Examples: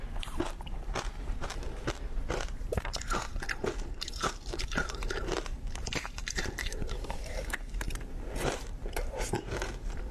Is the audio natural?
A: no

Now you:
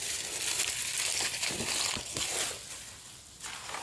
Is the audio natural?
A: yes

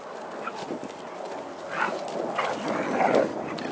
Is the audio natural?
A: yes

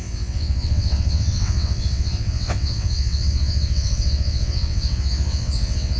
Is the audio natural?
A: no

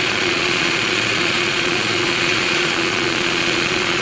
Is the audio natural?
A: no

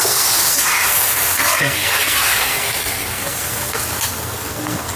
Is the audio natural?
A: no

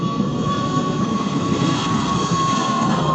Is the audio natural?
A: no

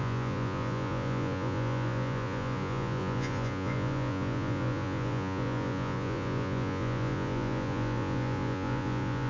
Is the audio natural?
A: no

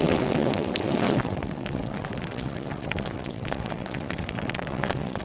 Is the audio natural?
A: no